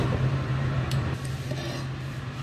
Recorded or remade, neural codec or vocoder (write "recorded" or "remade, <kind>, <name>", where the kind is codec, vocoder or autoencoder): recorded